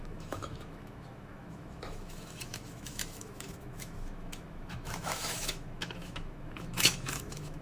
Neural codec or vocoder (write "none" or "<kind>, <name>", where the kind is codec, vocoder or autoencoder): autoencoder, DAC-VAE